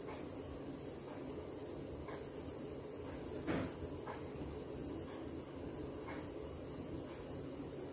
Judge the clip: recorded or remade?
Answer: recorded